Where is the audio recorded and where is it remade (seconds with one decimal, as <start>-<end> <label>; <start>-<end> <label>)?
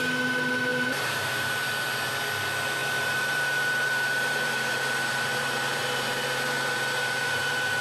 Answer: 0.0-0.7 recorded; 0.7-1.5 remade; 1.5-2.8 recorded; 2.8-7.8 remade